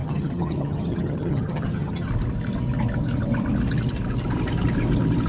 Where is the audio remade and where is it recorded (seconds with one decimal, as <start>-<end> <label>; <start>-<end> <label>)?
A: 0.0-2.1 remade; 2.1-5.3 recorded